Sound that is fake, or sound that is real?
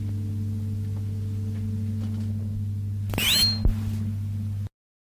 real